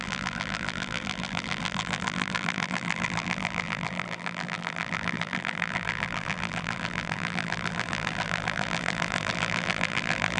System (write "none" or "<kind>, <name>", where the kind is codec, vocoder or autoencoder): vocoder, BigVGAN v2